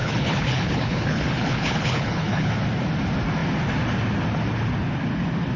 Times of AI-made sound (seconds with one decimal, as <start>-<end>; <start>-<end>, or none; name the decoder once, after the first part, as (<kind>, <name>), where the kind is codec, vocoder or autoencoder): 0.0-2.5 (codec, HILCodec)